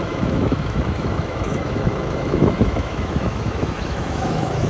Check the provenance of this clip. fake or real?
fake